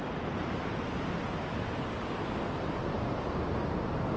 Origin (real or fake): real